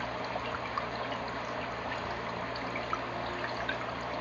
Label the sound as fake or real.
real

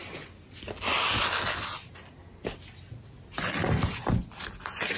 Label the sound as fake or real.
real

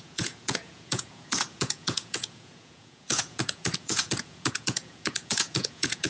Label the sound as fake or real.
fake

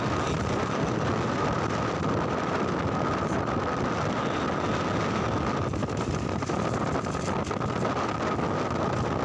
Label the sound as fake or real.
real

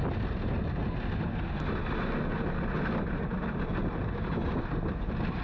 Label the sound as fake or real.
real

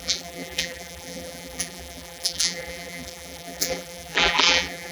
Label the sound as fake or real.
fake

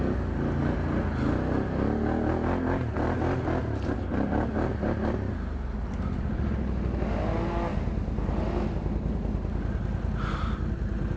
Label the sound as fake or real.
real